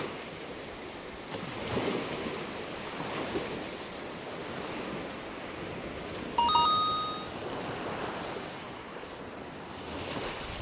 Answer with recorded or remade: recorded